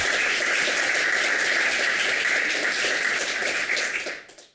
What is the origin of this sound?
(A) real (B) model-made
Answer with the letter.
A